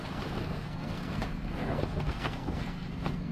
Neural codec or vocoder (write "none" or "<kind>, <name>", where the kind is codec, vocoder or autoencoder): codec, SNAC